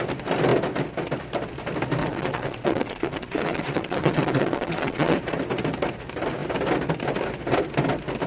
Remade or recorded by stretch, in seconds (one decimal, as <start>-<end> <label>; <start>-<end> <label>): 0.0-2.0 recorded; 2.0-5.2 remade; 5.2-8.3 recorded

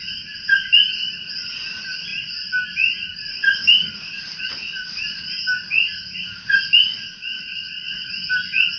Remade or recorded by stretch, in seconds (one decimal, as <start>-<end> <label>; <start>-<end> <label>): 0.0-7.2 recorded; 7.2-8.1 remade; 8.1-8.8 recorded

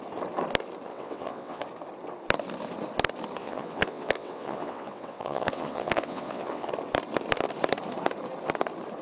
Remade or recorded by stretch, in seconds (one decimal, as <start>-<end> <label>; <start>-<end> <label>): 0.0-0.9 recorded; 0.9-1.6 remade; 1.6-3.4 recorded; 3.4-6.7 remade; 6.7-9.0 recorded

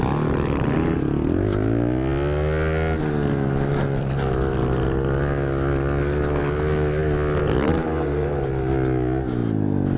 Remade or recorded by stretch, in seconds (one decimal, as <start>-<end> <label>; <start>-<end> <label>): 0.0-10.0 recorded

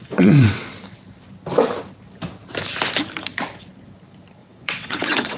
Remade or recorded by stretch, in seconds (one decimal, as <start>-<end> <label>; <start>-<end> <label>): 0.0-0.7 remade; 0.7-4.4 recorded; 4.4-5.4 remade

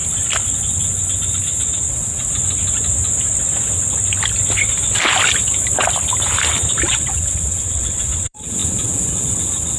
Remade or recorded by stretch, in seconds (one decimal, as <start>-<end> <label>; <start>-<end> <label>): 0.0-1.9 recorded; 1.9-2.3 remade; 2.3-6.9 recorded; 6.9-9.8 remade